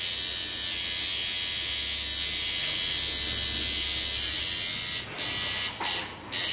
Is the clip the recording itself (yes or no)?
yes